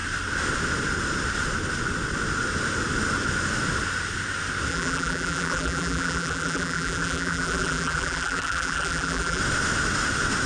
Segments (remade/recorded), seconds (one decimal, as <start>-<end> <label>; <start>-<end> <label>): 0.0-4.7 recorded; 4.7-9.4 remade; 9.4-10.5 recorded